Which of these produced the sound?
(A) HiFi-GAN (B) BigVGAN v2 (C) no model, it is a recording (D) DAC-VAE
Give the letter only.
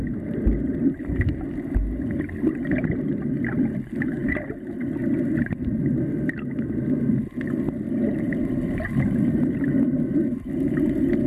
C